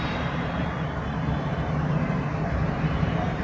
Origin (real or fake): fake